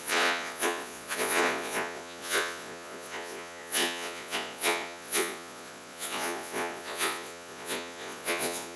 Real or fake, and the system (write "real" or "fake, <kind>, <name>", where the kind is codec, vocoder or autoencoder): fake, vocoder, Vocos